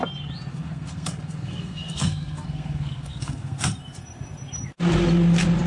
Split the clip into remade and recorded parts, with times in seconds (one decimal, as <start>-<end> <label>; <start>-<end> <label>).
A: 0.0-0.5 recorded; 0.5-3.7 remade; 3.7-5.7 recorded